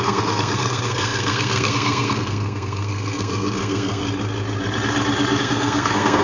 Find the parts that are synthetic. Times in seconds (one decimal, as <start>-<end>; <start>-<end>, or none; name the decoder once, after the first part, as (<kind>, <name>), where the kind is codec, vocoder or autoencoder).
0.0-4.0 (codec, SNAC); 5.4-6.2